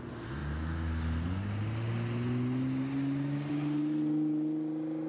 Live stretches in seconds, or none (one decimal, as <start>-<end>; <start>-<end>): 0.0-5.1